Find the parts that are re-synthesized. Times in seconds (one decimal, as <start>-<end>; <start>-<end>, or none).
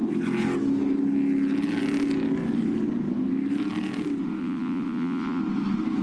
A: 4.4-5.4